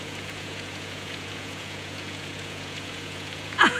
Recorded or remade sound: remade